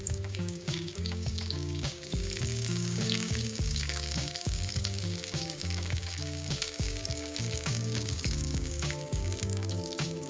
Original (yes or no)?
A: no